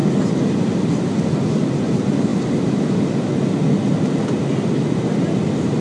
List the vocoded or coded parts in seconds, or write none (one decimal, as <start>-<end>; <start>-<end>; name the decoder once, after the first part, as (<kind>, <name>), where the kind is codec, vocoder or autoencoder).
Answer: none